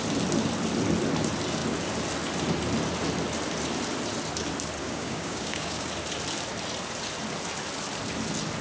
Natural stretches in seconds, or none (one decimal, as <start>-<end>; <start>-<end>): 0.0-4.8; 5.9-8.6